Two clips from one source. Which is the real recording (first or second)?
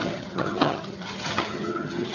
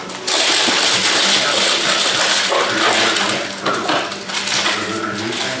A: second